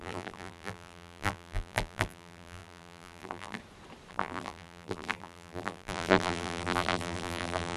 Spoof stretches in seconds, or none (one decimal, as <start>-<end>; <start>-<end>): 0.0-3.6; 4.1-7.8